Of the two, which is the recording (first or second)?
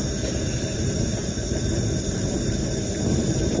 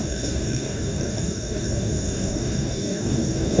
first